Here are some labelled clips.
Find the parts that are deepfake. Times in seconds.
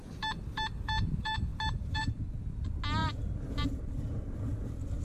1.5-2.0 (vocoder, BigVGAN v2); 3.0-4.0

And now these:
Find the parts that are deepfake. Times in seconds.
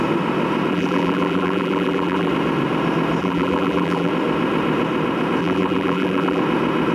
0.7-2.3 (vocoder, BigVGAN v2); 3.2-4.1; 5.4-6.4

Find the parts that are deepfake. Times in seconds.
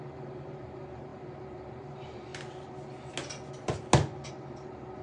0.0-2.3 (vocoder, BigVGAN v2); 4.3-5.0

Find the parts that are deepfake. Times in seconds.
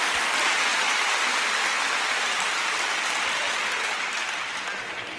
0.7-2.9 (vocoder, BigVGAN v2)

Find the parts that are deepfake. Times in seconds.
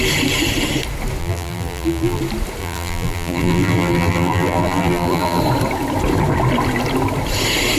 1.2-2.2 (vocoder, BigVGAN v2); 2.6-5.4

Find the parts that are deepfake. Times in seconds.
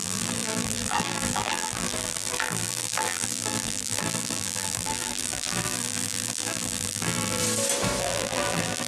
0.0-7.4 (vocoder, BigVGAN v2); 8.0-8.9